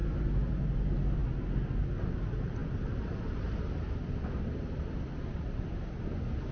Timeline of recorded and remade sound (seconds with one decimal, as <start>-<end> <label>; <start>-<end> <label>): 0.0-6.5 recorded